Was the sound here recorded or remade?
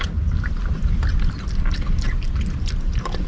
recorded